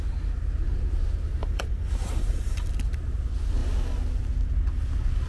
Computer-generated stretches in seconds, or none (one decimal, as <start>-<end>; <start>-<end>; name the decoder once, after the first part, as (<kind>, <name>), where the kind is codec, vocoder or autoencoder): 1.4-2.7 (vocoder, BigVGAN v2)

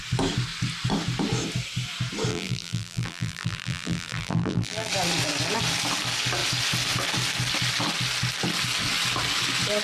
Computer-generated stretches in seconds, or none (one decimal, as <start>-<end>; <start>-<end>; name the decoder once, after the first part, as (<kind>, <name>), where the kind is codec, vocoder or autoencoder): 2.3-4.9 (vocoder, BigVGAN v2)